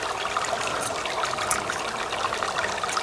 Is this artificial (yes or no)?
no